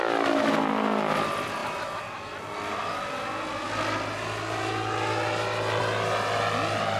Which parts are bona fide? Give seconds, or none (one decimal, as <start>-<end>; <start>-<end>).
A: 0.0-7.0